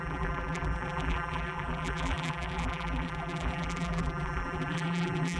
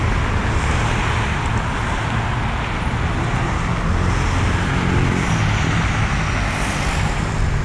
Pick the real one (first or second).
second